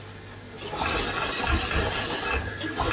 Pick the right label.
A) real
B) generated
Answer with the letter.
A